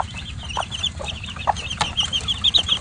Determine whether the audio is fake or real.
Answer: real